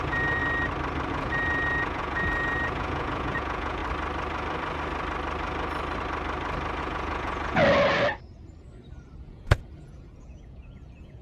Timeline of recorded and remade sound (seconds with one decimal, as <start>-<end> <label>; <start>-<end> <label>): 0.0-0.4 remade; 0.4-1.1 recorded; 1.1-3.8 remade; 3.8-6.8 recorded; 6.8-7.6 remade; 7.6-9.2 recorded; 9.2-11.2 remade